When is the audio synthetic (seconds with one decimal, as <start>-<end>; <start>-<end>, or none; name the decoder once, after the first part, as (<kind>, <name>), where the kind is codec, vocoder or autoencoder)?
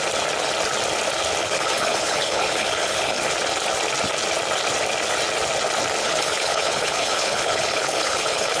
1.4-3.2 (codec, HILCodec); 6.0-8.6